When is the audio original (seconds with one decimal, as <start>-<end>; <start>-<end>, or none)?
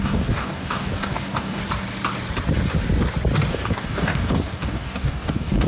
1.6-3.5